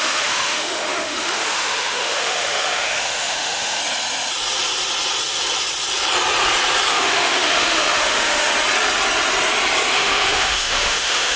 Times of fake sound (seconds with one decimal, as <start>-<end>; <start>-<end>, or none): 0.0-3.8; 6.9-8.5; 9.9-11.4